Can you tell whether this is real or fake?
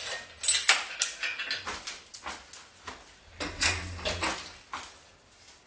real